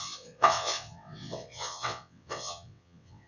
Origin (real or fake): fake